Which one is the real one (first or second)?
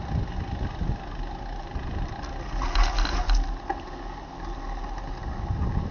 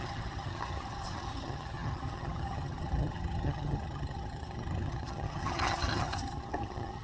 first